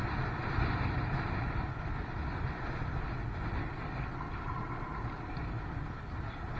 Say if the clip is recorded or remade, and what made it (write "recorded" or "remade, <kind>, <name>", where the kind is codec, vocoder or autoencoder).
recorded